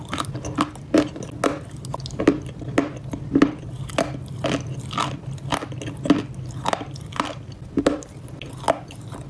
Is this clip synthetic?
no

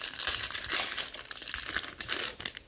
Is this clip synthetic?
no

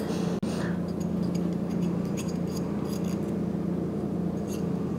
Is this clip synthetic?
no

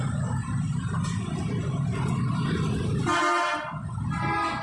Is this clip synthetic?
no